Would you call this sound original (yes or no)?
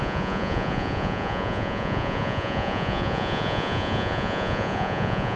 no